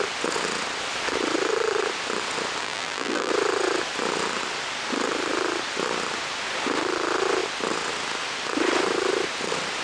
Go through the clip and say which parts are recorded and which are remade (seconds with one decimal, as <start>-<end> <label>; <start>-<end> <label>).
0.0-2.6 recorded; 2.6-3.3 remade; 3.3-9.8 recorded